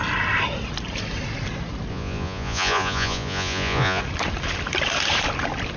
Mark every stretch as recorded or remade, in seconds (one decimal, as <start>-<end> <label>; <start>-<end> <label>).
0.0-1.9 recorded; 1.9-4.0 remade; 4.0-5.8 recorded